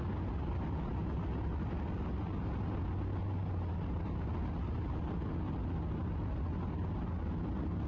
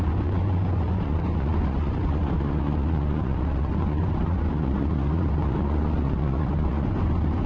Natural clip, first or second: first